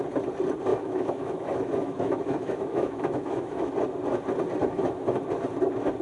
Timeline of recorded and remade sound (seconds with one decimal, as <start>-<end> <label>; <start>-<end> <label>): 0.0-0.7 recorded; 0.7-3.7 remade; 3.7-4.6 recorded; 4.6-5.2 remade; 5.2-6.0 recorded